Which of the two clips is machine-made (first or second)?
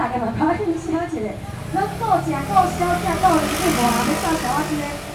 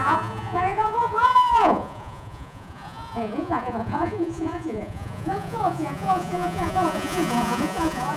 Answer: second